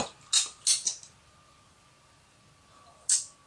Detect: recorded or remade recorded